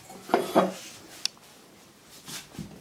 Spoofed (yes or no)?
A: no